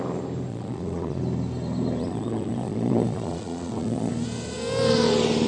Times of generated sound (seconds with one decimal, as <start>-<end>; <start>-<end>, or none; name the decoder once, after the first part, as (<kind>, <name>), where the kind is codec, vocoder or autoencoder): 0.5-1.2 (vocoder, Vocos); 2.0-4.1